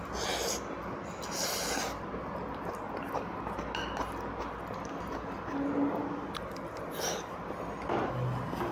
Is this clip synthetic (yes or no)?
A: no